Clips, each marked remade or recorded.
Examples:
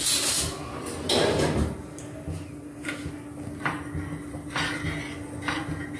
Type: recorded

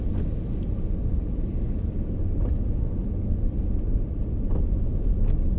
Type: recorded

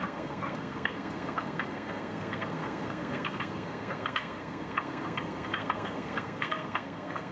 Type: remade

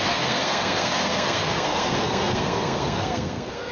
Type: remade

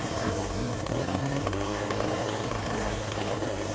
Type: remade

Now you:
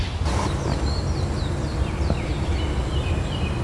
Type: recorded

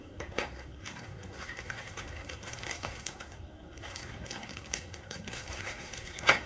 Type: remade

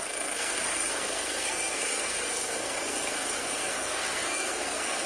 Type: remade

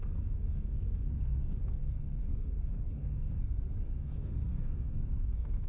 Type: remade